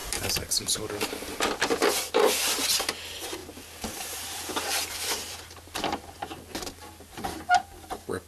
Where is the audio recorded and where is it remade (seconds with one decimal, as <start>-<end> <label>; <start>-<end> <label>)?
0.0-0.9 remade; 0.9-3.4 recorded; 3.4-7.9 remade; 7.9-8.3 recorded